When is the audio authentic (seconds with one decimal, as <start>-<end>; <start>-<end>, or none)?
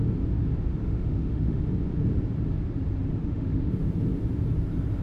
0.0-0.8; 1.6-3.1; 3.7-5.0